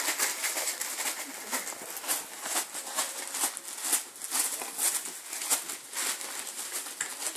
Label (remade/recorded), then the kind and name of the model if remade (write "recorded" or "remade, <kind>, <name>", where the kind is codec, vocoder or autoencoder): recorded